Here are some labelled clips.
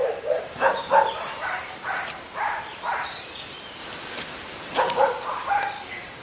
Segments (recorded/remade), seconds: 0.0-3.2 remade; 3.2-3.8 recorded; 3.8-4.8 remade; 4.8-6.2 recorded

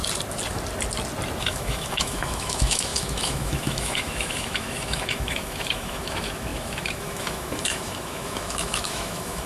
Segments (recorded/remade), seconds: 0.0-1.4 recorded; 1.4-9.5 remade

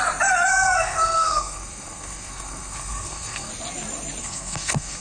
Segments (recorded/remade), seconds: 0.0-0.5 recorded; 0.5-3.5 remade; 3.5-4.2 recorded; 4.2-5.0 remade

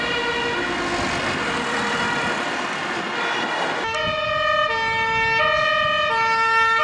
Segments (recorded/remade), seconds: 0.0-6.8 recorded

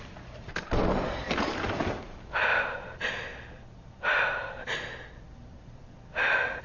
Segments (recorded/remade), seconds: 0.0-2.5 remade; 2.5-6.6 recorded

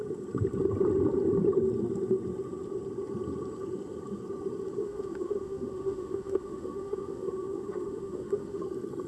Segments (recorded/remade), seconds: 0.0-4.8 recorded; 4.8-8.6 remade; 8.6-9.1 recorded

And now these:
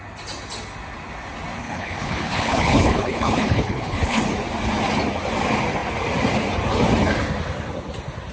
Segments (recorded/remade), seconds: 0.0-1.6 recorded; 1.6-4.2 remade; 4.2-8.3 recorded